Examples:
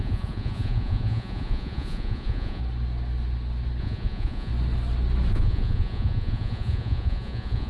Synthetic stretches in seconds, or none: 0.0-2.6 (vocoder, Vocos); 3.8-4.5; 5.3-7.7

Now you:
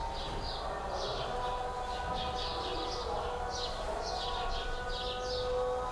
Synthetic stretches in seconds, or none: none

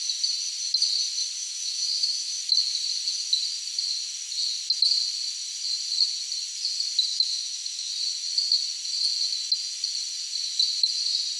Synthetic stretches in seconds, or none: 1.4-2.3 (autoencoder, DAC-VAE); 7.1-7.9

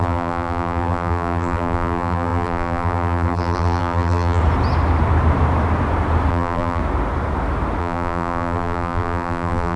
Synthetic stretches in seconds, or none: 0.0-4.4 (vocoder, BigVGAN v2); 6.3-6.8; 7.8-9.8

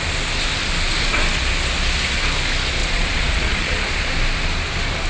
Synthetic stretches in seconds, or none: 2.8-4.1 (vocoder, Vocos)

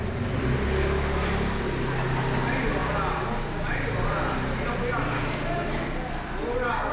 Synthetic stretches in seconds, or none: none

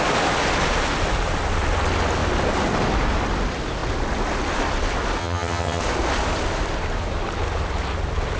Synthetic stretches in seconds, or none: 5.2-5.8 (vocoder, HiFi-GAN)

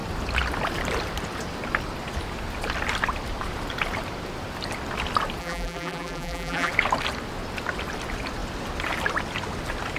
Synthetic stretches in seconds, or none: 5.4-6.7 (vocoder, BigVGAN v2)